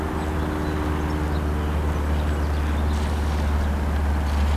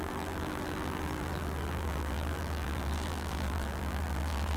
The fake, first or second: second